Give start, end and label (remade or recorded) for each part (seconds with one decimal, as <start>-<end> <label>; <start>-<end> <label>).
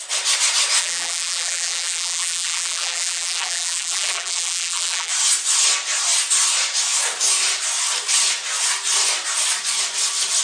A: 0.0-0.8 recorded; 0.8-5.1 remade; 5.1-10.4 recorded